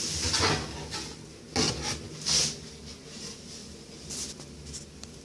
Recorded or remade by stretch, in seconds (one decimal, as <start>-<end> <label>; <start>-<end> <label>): 0.0-5.2 recorded